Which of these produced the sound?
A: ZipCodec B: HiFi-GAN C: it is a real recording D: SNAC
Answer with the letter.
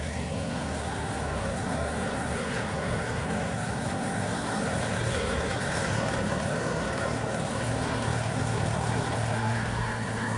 D